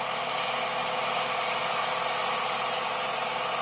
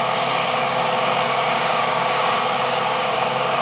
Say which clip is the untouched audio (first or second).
first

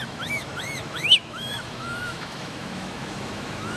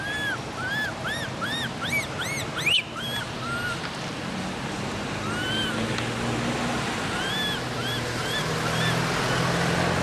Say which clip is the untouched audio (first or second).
second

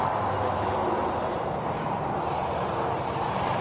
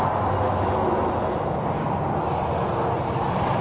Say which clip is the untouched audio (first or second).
second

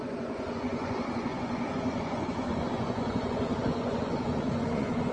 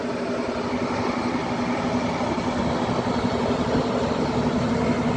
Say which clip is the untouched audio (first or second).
second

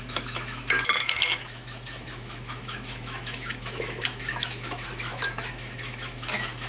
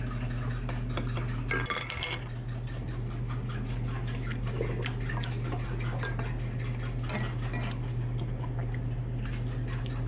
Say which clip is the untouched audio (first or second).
second